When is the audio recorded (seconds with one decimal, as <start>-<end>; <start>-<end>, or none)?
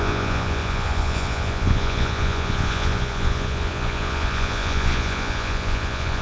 none